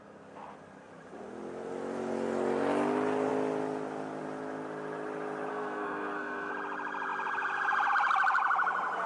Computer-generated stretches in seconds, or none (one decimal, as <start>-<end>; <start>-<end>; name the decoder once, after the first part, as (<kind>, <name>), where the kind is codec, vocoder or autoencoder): 5.5-6.5 (codec, SNAC)